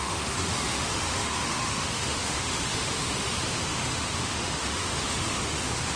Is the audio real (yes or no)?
no